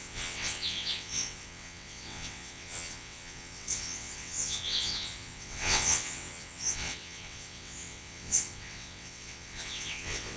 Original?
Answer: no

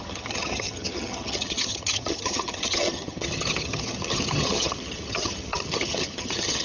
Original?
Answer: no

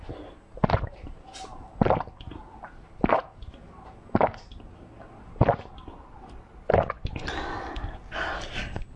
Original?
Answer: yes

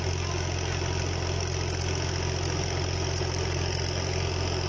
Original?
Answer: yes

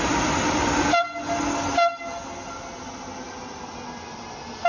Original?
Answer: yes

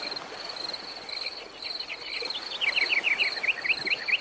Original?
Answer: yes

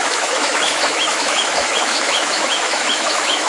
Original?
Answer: no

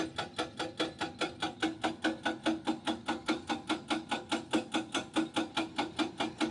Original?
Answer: yes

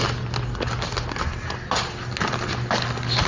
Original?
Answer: yes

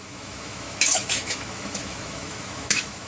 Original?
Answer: no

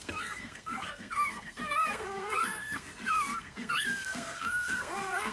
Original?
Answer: no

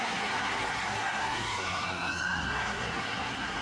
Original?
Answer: no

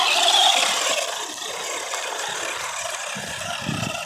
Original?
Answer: yes